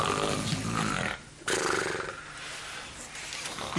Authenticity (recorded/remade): recorded